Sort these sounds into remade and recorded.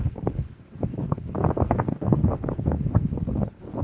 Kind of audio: remade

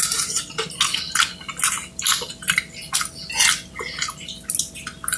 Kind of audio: recorded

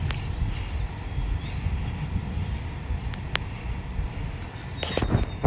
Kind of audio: recorded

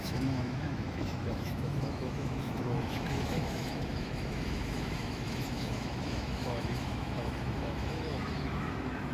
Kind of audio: remade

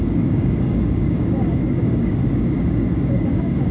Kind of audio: remade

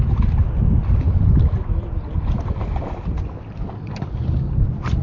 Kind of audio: recorded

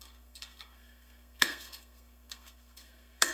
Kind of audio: remade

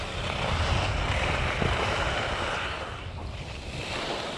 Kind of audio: recorded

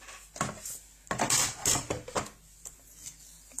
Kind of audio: recorded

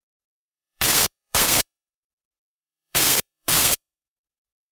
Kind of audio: remade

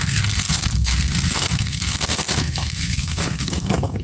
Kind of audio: remade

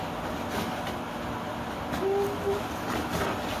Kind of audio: recorded